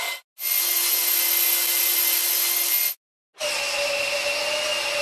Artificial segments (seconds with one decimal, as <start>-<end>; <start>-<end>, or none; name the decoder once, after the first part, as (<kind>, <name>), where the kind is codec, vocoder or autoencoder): none